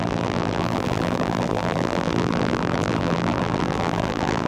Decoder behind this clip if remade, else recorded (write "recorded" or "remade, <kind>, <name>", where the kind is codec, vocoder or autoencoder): remade, vocoder, BigVGAN v2